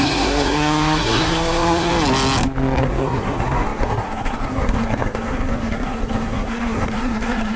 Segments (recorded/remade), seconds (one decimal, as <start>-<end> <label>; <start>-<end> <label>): 0.0-1.9 remade; 1.9-2.8 recorded; 2.8-7.6 remade

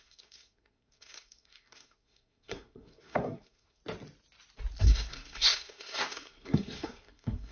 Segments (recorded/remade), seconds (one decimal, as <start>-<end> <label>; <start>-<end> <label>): 0.0-3.8 remade; 3.8-4.8 recorded; 4.8-7.5 remade

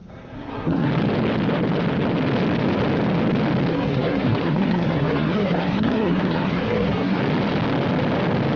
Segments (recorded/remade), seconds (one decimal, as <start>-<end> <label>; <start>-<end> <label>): 0.0-0.9 remade; 0.9-3.7 recorded; 3.7-7.2 remade; 7.2-8.6 recorded

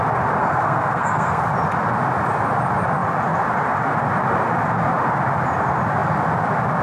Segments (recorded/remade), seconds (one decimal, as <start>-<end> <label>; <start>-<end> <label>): 0.0-0.4 recorded; 0.4-1.4 remade; 1.4-6.8 recorded

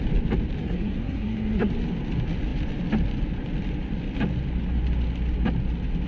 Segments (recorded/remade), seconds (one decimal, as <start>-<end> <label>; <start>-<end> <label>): 0.0-0.6 recorded; 0.6-1.7 remade; 1.7-6.1 recorded

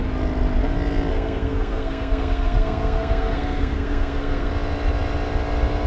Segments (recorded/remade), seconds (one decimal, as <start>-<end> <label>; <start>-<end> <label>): 0.0-1.1 recorded; 1.1-4.5 remade; 4.5-5.9 recorded

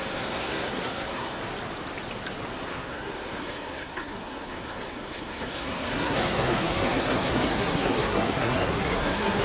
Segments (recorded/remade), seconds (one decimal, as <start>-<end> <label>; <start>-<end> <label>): 0.0-1.4 remade; 1.4-2.5 recorded; 2.5-9.4 remade